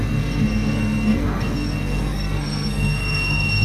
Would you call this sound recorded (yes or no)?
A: no